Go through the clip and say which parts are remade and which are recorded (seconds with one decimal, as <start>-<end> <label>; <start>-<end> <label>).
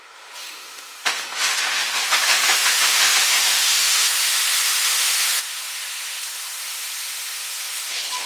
0.0-8.3 remade